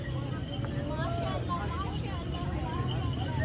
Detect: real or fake real